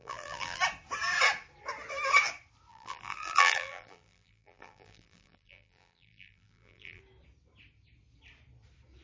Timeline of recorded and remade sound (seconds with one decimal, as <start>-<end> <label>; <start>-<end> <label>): 0.0-0.6 remade; 0.6-2.7 recorded; 2.7-7.0 remade; 7.0-9.0 recorded